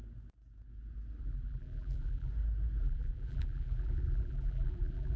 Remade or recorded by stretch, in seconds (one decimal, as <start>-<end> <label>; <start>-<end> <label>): 0.0-1.2 recorded; 1.2-2.3 remade; 2.3-2.8 recorded; 2.8-5.2 remade